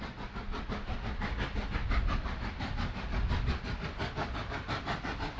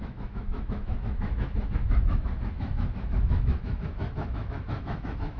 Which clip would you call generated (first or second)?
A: second